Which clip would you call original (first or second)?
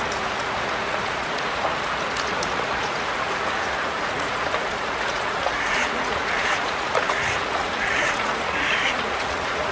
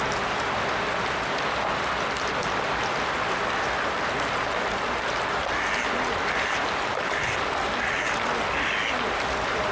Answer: second